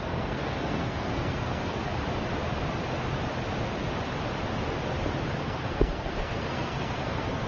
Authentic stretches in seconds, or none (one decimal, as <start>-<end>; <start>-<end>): 1.8-5.4